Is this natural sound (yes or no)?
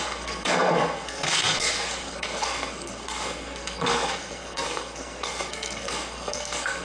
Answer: no